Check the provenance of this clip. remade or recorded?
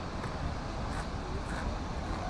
recorded